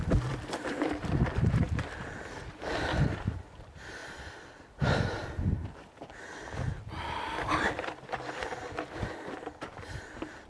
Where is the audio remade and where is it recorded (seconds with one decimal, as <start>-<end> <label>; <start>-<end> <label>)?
0.0-10.5 remade

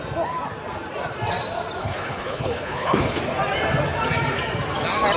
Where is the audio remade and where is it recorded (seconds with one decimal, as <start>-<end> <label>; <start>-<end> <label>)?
0.0-1.8 recorded; 1.8-3.2 remade; 3.2-5.2 recorded

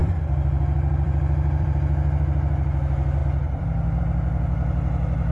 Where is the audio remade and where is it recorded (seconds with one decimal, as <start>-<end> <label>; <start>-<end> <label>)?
0.0-1.8 remade; 1.8-3.2 recorded; 3.2-4.0 remade; 4.0-5.3 recorded